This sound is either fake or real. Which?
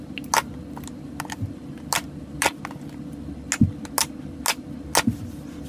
real